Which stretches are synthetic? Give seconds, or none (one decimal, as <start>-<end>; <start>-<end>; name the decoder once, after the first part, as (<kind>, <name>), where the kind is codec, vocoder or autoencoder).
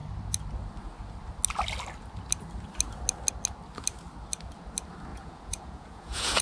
5.1-6.4 (vocoder, Vocos)